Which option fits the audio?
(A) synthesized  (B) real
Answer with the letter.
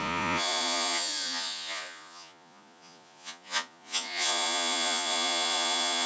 A